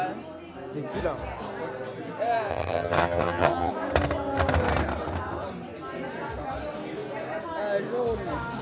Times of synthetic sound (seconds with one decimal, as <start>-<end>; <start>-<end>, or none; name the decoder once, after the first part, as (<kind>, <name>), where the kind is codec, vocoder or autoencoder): 2.5-3.7 (vocoder, HiFi-GAN)